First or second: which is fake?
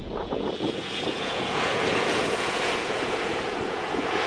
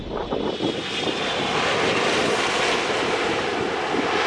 first